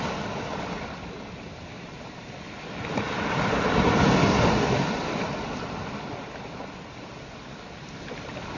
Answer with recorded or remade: recorded